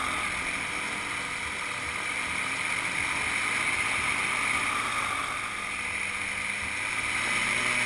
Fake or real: real